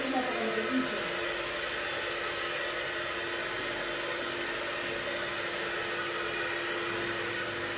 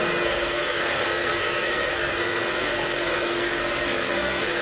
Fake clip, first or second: second